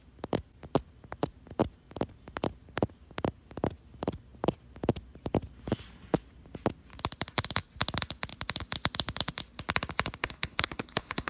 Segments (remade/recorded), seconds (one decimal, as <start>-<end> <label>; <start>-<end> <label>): 0.0-10.2 recorded; 10.2-11.3 remade